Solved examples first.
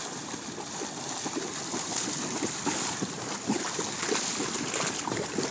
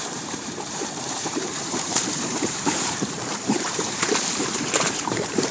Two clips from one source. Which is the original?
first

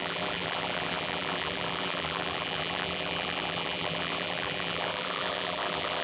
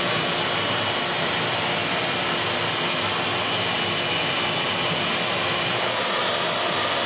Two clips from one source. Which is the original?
second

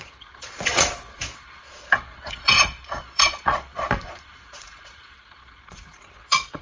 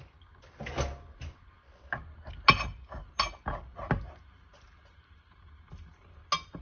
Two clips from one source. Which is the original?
second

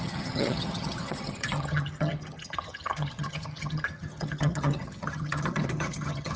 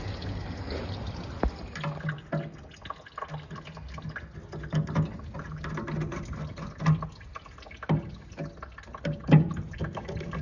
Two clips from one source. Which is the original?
second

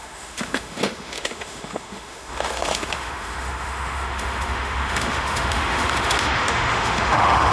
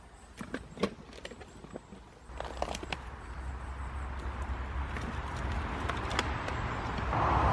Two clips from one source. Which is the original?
second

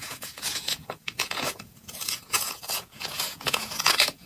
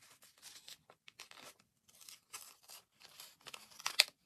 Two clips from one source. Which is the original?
second